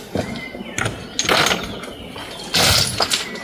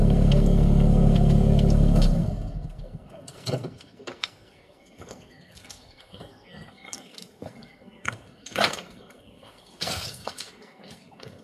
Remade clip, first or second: second